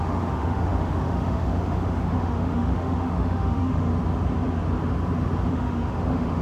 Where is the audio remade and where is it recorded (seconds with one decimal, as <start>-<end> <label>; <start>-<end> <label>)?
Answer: 0.0-3.9 remade; 3.9-5.5 recorded; 5.5-6.4 remade